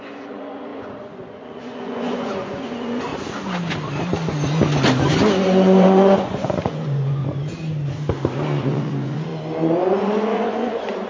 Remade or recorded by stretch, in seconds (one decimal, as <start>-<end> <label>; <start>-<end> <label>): 0.0-3.1 remade; 3.1-5.4 recorded; 5.4-7.2 remade; 7.2-8.6 recorded; 8.6-9.3 remade; 9.3-9.8 recorded; 9.8-11.1 remade

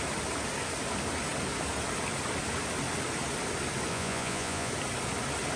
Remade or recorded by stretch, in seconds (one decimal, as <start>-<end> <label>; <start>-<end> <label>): 0.0-3.9 recorded; 3.9-4.7 remade; 4.7-5.6 recorded